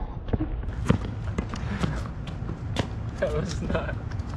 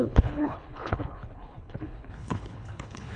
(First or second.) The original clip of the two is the first